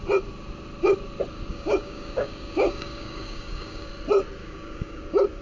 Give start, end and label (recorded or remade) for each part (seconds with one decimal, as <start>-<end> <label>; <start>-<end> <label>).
0.0-1.5 recorded; 1.5-3.9 remade; 3.9-4.4 recorded; 4.4-5.0 remade; 5.0-5.4 recorded